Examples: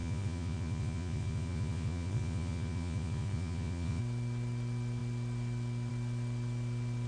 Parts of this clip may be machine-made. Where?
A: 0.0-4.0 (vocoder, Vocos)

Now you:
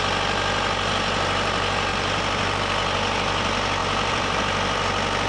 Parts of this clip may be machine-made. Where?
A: 1.9-2.6 (vocoder, BigVGAN v2); 3.8-4.4

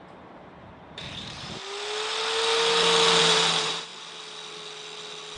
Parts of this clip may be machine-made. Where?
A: 0.0-1.6 (vocoder, BigVGAN v2); 3.2-3.9

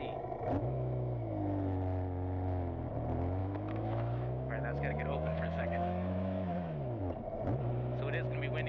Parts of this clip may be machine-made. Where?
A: 0.6-1.3 (autoencoder, DAC-VAE); 3.4-7.0

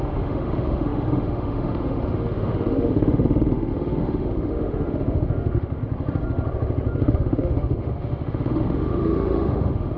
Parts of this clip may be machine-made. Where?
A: 0.0-5.8 (autoencoder, DAC-VAE); 7.0-10.0

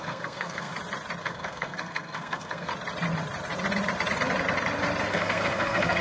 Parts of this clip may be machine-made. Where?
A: 0.0-0.7 (codec, SNAC); 1.2-2.7; 5.1-6.0